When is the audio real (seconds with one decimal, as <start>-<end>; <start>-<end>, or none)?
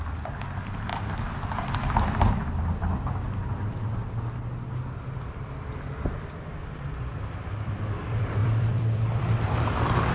0.9-5.0